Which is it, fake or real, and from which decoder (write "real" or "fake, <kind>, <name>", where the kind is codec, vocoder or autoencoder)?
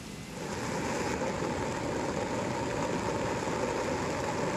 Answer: real